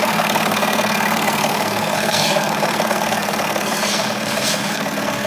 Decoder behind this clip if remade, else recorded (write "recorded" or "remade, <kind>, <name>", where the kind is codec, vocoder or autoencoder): remade, codec, SNAC